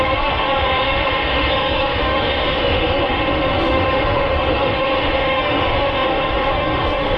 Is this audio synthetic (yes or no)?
yes